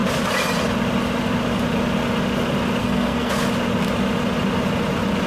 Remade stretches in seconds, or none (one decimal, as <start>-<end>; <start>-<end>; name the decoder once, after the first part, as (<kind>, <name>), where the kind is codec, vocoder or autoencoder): 2.8-3.3 (codec, SNAC)